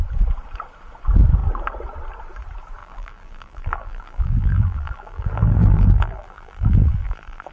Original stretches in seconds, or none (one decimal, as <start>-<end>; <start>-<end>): 0.0-2.8